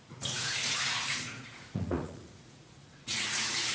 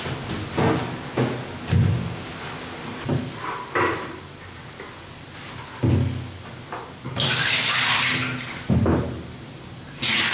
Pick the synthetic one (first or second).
first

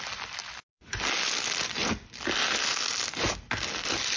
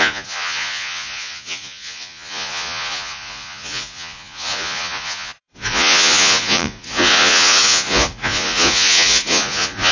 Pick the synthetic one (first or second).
second